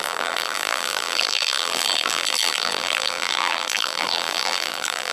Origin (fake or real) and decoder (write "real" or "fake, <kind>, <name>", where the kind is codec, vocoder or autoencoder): fake, vocoder, BigVGAN v2